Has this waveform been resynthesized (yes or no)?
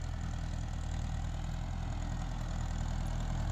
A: no